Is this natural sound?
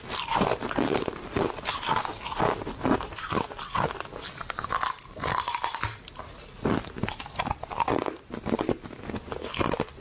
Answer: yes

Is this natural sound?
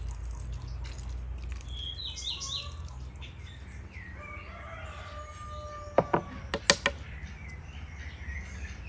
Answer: yes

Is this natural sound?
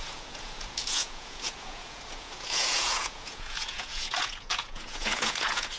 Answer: no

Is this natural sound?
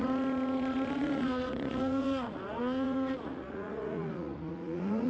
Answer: no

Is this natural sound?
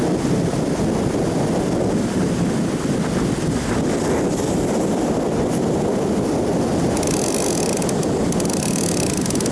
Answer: yes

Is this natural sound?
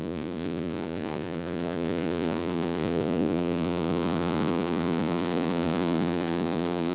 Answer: no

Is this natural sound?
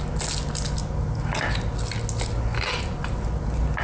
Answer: yes